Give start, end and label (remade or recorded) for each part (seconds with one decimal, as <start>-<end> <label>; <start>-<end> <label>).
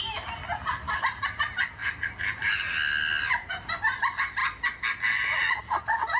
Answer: 0.0-6.2 recorded